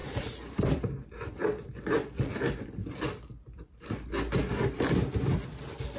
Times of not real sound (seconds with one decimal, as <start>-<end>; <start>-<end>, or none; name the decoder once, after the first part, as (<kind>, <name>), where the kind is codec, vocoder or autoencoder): 0.0-0.6 (vocoder, BigVGAN v2); 1.4-4.1